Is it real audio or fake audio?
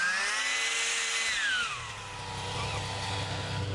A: real